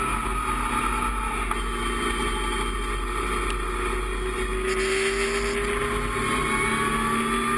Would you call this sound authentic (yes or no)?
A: yes